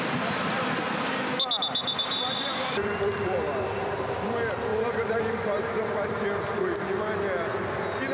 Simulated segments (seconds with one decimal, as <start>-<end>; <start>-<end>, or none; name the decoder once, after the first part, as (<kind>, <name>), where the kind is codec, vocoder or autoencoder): 1.8-3.4 (vocoder, BigVGAN v2); 4.7-5.2